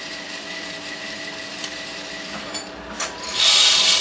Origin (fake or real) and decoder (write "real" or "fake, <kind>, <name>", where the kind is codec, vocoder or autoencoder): fake, vocoder, BigVGAN v2